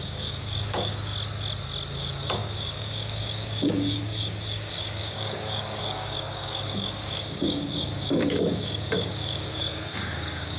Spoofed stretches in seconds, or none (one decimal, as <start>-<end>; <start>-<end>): 0.0-1.1; 1.9-10.6